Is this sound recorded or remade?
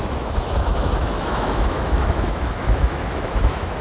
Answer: remade